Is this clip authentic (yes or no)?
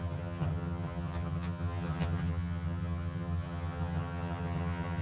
no